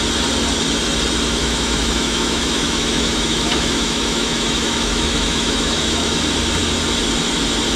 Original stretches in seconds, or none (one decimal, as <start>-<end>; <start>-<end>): 0.0-1.4; 6.1-7.8